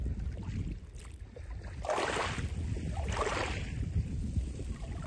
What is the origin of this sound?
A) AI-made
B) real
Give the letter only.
B